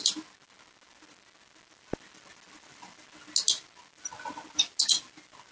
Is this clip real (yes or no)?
yes